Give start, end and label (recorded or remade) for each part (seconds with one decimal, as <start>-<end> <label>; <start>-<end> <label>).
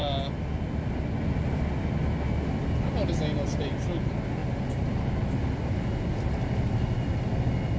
0.0-7.8 recorded